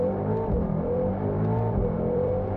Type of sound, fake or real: fake